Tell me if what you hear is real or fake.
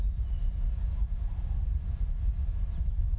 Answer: real